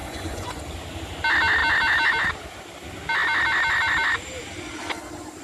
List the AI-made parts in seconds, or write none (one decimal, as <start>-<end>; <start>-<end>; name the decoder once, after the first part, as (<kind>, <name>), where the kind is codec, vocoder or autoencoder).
0.0-0.6 (vocoder, Vocos)